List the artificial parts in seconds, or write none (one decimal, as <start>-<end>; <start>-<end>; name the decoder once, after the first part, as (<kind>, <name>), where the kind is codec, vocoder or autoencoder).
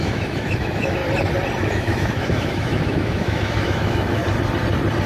0.0-1.0 (autoencoder, DAC-VAE); 1.6-4.2